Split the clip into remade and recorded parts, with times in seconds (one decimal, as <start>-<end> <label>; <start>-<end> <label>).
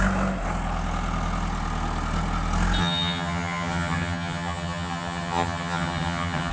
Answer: 0.0-2.8 recorded; 2.8-6.5 remade